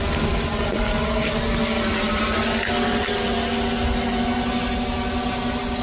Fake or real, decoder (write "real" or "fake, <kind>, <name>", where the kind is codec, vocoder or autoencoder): real